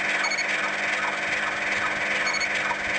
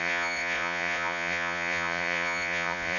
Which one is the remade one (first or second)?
second